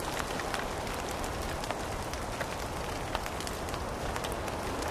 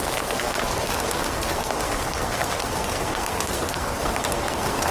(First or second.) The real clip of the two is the first